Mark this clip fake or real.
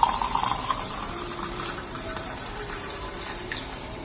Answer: fake